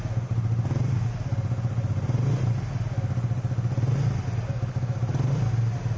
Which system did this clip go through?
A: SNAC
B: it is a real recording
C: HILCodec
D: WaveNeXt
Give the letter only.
B